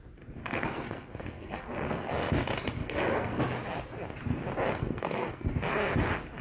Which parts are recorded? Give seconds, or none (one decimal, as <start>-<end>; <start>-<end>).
0.0-0.4; 2.1-2.8; 3.4-4.7; 5.5-6.4